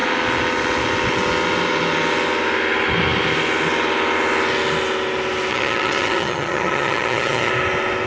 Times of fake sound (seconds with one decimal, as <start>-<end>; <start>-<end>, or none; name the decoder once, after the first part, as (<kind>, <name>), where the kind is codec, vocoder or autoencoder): 5.5-7.5 (vocoder, HiFi-GAN)